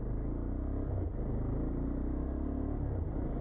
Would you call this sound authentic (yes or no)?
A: yes